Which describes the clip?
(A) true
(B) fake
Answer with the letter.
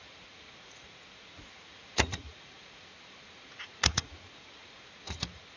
B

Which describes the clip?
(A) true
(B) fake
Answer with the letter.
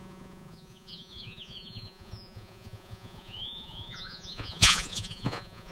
B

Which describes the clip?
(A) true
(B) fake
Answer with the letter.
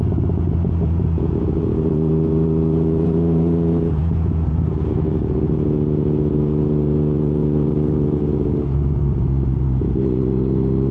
B